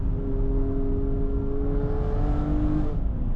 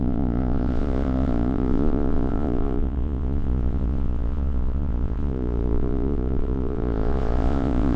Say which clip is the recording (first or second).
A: first